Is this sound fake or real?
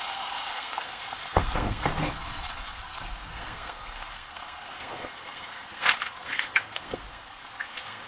fake